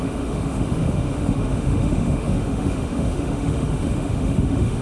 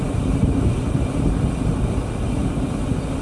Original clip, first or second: second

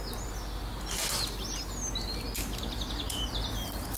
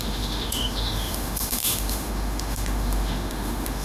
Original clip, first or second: first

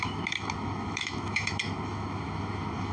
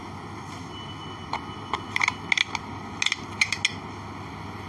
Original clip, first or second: second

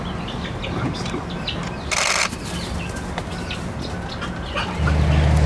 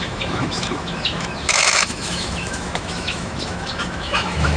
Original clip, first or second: first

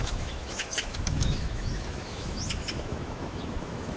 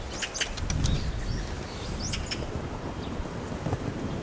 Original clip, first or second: second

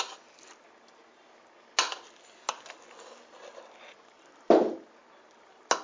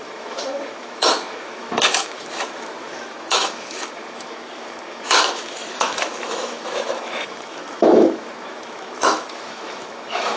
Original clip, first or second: first